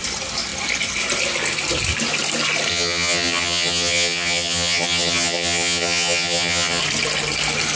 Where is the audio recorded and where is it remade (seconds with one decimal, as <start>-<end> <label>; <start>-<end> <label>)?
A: 0.0-2.7 recorded; 2.7-6.8 remade; 6.8-7.8 recorded

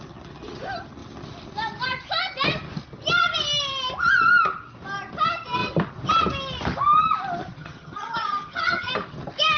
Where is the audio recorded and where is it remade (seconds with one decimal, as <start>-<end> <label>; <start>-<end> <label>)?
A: 0.0-7.6 recorded; 7.6-8.9 remade; 8.9-9.6 recorded

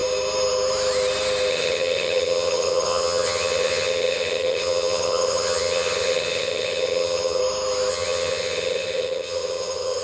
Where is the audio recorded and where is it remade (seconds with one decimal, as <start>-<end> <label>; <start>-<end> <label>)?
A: 0.0-1.5 recorded; 1.5-7.4 remade; 7.4-7.9 recorded; 7.9-10.0 remade